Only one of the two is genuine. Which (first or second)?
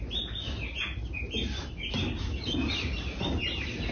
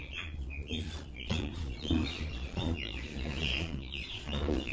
first